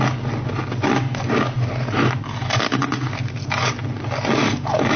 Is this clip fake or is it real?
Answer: real